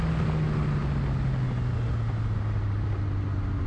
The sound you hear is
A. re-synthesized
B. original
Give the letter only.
B